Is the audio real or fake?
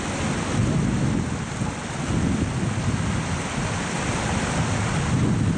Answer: real